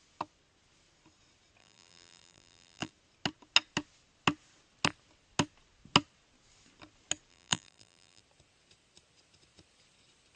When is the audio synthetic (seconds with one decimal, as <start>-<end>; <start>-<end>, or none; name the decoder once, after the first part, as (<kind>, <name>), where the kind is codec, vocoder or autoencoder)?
1.6-2.9 (vocoder, BigVGAN v2); 7.3-8.2